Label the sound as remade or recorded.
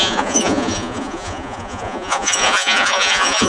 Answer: remade